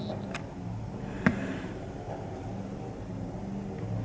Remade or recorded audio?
recorded